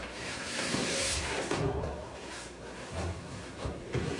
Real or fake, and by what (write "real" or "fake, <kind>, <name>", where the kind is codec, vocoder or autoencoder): fake, codec, SNAC